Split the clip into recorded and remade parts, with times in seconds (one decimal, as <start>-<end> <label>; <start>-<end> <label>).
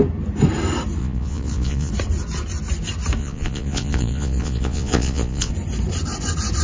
0.0-1.0 recorded; 1.0-1.9 remade; 1.9-3.2 recorded; 3.2-5.5 remade; 5.5-6.6 recorded